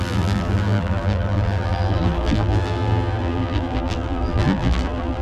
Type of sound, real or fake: fake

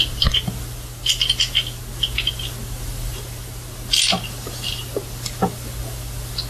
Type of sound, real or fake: real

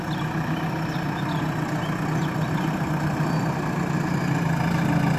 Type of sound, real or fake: real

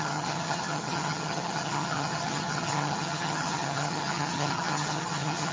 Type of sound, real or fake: fake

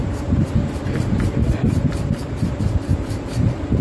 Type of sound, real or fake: fake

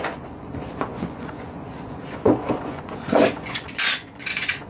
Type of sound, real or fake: fake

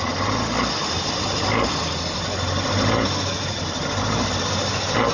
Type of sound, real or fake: real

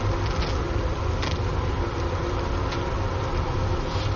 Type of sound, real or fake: real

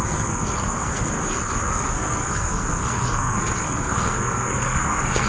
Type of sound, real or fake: fake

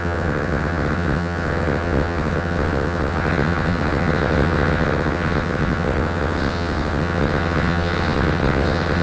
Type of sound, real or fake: fake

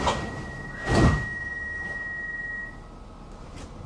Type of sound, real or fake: real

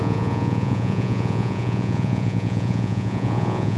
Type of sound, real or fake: fake